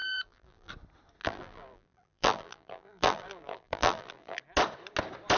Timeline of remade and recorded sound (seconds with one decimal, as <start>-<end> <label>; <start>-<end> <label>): 0.0-0.7 remade; 0.7-1.2 recorded; 1.2-4.4 remade; 4.4-5.4 recorded